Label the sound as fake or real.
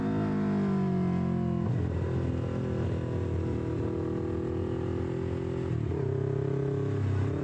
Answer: real